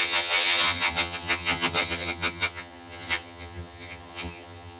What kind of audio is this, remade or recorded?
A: remade